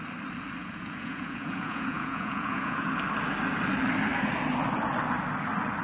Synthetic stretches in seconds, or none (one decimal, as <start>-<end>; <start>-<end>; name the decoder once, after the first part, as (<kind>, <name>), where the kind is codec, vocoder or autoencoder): 0.6-2.9 (vocoder, Vocos)